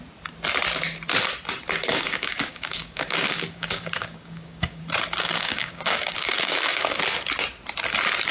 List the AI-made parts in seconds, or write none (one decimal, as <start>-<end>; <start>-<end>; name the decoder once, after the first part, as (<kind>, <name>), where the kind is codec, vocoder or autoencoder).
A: 1.9-4.8 (codec, DAC); 5.2-7.0